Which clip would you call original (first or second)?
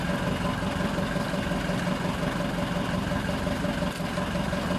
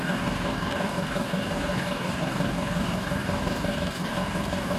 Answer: first